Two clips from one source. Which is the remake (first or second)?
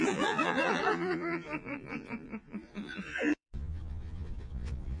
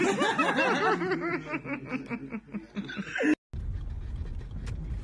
first